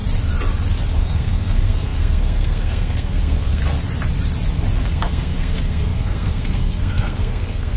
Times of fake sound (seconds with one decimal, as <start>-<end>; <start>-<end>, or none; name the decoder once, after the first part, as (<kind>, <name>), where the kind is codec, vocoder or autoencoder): 1.0-3.6 (codec, SNAC); 4.8-7.8